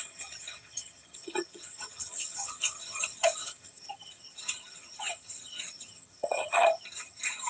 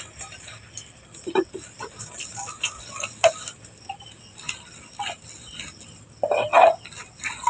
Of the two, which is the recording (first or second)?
second